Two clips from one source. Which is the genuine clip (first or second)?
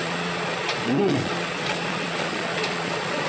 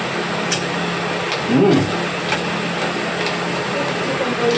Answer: second